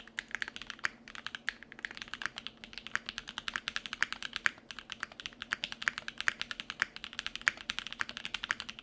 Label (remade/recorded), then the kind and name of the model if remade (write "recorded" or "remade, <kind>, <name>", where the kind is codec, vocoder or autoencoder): recorded